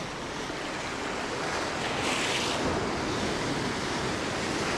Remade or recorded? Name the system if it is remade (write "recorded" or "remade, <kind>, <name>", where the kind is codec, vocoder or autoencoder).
recorded